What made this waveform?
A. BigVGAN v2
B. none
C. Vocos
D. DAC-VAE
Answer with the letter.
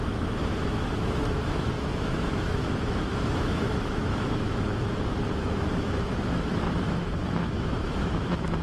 D